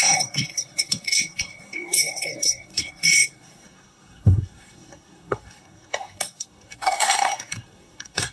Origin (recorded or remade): remade